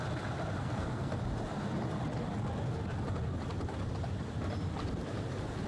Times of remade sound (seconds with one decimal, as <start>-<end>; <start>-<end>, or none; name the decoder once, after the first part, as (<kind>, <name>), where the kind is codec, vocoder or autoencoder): 0.6-1.2 (codec, SNAC)